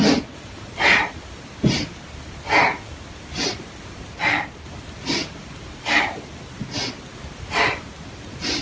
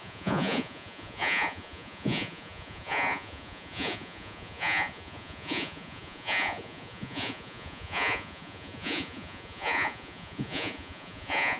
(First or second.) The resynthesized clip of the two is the second